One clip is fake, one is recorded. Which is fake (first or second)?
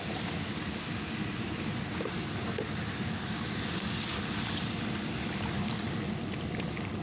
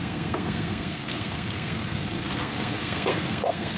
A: second